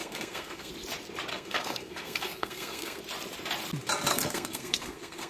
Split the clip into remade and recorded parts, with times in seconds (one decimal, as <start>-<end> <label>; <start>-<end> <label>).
0.0-0.7 remade; 0.7-1.3 recorded; 1.3-3.0 remade; 3.0-4.1 recorded; 4.1-5.3 remade